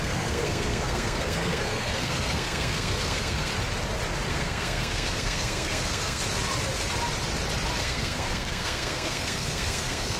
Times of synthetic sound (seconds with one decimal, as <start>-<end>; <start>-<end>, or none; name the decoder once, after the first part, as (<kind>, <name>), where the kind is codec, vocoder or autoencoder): 0.0-3.5 (codec, SNAC); 4.3-6.2; 7.8-10.2